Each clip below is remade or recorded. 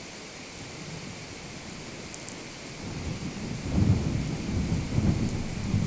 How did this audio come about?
recorded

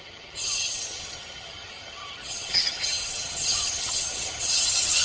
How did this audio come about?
remade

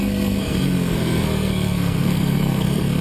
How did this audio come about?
remade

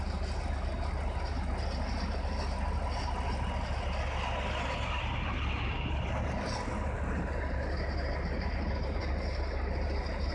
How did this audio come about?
recorded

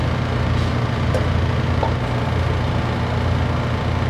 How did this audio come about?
recorded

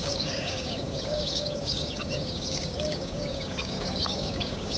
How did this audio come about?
remade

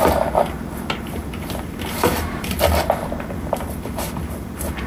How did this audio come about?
recorded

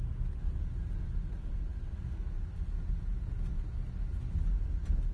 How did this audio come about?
recorded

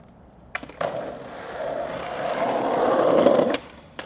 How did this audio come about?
remade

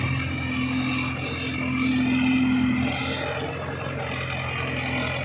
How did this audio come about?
recorded